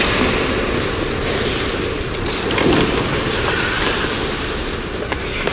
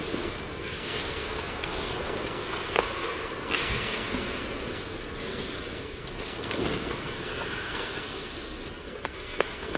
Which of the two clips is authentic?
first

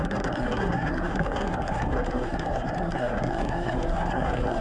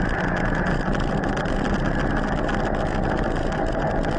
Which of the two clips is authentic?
second